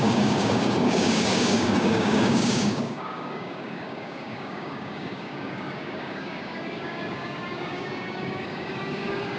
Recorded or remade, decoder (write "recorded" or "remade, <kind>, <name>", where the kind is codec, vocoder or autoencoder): remade, codec, DAC